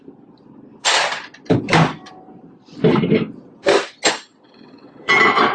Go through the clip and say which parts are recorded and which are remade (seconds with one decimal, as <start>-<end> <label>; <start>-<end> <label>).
0.0-4.3 recorded; 4.3-5.1 remade; 5.1-5.5 recorded